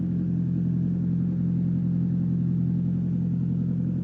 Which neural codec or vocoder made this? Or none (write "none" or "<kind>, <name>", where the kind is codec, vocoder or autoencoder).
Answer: none